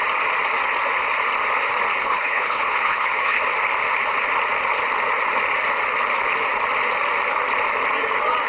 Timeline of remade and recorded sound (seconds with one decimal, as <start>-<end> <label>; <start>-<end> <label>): 0.0-2.0 recorded; 2.0-3.4 remade; 3.4-8.5 recorded